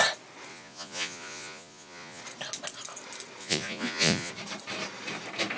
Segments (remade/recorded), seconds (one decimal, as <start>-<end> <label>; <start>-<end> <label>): 0.0-0.5 recorded; 0.5-2.2 remade; 2.2-3.4 recorded; 3.4-4.3 remade; 4.3-5.6 recorded